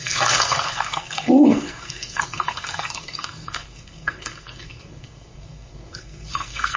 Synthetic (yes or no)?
yes